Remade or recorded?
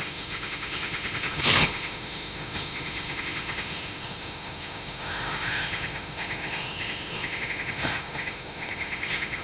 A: remade